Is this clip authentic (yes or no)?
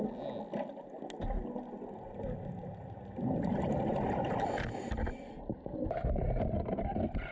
yes